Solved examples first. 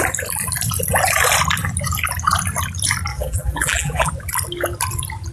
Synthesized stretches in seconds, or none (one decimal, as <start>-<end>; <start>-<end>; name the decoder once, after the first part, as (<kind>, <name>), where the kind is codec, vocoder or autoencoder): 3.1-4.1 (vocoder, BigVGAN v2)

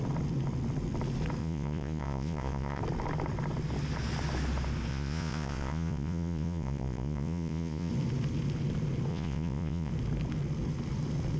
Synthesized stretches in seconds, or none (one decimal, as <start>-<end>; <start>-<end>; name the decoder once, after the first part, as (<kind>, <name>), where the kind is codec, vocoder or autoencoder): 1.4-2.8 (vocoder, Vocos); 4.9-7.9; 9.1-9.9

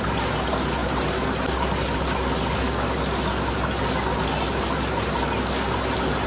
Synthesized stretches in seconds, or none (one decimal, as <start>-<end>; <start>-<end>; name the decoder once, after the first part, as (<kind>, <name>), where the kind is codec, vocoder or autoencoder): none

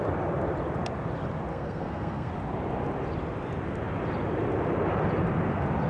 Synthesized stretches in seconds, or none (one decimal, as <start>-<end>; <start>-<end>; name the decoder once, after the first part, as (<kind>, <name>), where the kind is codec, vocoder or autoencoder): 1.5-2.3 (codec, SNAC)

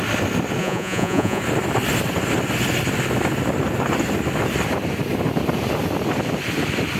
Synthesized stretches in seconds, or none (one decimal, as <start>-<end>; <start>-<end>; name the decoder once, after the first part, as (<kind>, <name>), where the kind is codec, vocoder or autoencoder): 0.6-1.4 (vocoder, Vocos)

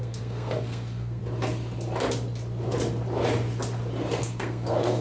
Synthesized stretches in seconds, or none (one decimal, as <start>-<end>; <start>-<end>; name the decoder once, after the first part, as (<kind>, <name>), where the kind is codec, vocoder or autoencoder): 0.0-1.2 (codec, SNAC); 4.2-5.0

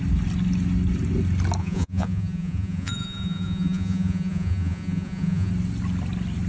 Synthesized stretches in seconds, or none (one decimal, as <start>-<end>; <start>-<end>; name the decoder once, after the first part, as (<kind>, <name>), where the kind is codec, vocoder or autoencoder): 1.6-5.5 (vocoder, Vocos)

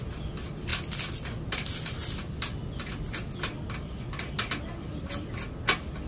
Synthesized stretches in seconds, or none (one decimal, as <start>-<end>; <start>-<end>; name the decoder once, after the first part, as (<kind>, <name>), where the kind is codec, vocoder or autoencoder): none